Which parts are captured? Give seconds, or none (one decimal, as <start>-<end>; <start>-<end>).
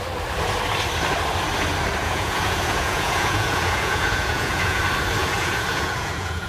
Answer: 0.0-2.0; 4.8-5.2